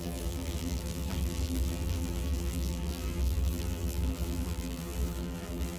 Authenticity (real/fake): fake